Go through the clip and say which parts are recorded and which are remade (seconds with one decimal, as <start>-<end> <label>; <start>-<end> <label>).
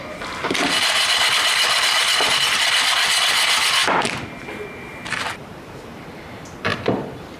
0.0-6.7 recorded; 6.7-7.4 remade